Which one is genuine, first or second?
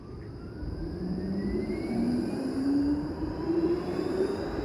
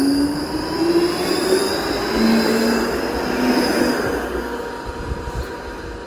second